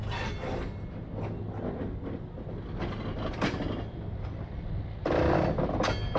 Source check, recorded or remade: recorded